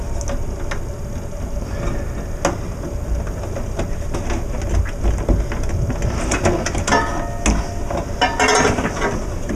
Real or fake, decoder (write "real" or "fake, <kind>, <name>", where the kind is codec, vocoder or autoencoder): real